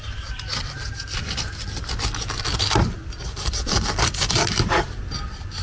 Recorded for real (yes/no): yes